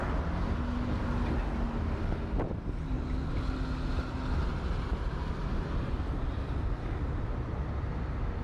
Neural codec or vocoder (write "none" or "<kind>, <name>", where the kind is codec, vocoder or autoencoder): none